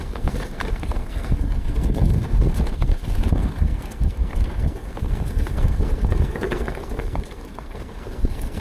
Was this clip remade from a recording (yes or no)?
yes